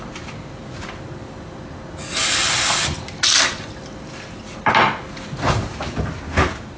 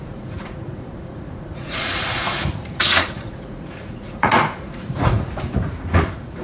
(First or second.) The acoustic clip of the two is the first